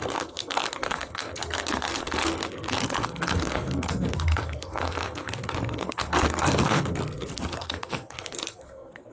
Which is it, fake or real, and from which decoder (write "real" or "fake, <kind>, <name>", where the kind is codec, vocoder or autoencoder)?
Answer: fake, codec, SNAC